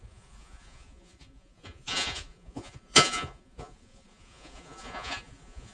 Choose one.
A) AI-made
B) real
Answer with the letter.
A